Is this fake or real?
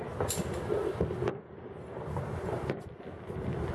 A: real